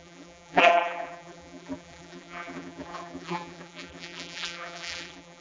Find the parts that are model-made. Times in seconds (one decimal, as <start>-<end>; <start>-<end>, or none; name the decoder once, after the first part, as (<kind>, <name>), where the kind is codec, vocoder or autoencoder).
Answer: 0.0-5.4 (vocoder, BigVGAN v2)